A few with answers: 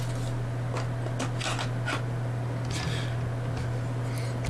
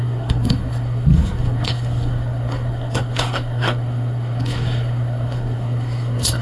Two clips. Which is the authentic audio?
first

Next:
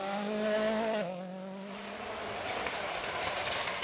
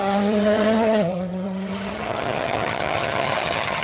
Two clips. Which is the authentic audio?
first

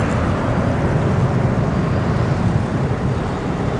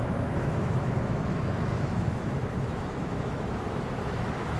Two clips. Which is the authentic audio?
first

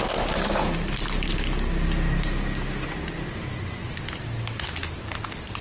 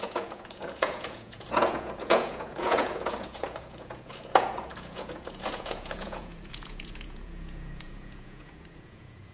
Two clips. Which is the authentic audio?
first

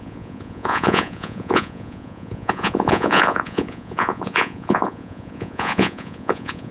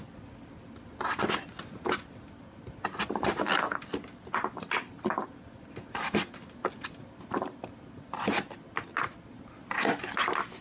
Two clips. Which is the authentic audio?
second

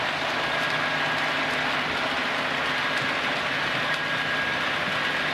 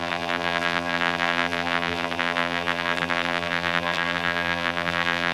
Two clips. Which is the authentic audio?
first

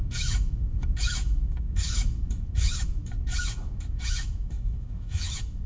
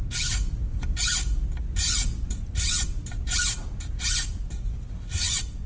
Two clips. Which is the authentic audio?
second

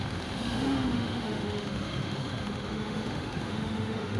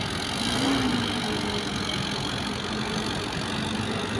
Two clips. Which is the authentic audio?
second